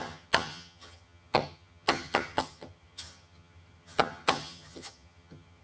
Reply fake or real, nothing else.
fake